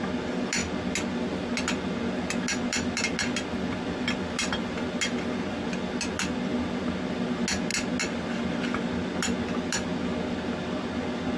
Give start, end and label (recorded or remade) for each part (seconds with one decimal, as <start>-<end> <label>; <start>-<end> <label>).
0.0-11.4 recorded